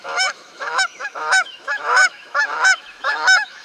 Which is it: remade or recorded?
remade